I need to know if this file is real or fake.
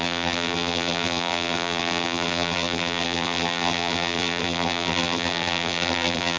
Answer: fake